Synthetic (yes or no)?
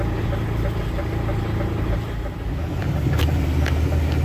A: no